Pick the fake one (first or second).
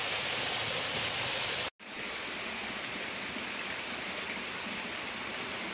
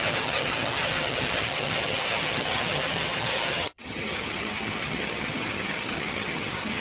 second